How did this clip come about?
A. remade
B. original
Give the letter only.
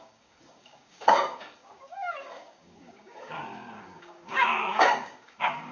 A